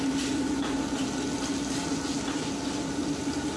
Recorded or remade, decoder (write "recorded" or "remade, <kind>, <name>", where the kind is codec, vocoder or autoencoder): recorded